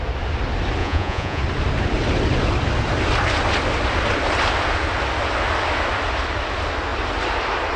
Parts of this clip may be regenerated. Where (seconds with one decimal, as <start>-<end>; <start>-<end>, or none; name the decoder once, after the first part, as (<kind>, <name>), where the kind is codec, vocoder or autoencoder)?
0.8-1.4 (vocoder, Vocos)